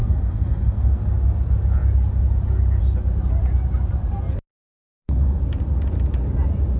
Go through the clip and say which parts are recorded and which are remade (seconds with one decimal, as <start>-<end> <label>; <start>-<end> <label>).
0.0-1.0 remade; 1.0-4.5 recorded; 4.5-5.4 remade; 5.4-6.8 recorded